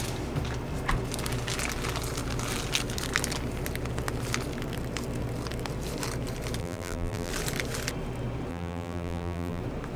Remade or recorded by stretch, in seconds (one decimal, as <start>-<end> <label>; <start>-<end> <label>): 0.0-6.6 recorded; 6.6-7.3 remade; 7.3-8.5 recorded; 8.5-9.6 remade; 9.6-10.0 recorded